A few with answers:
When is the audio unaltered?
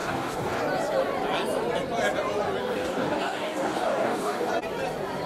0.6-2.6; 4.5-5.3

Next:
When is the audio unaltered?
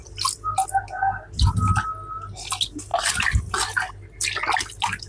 0.0-5.1